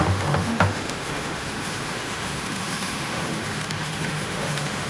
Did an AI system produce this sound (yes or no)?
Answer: yes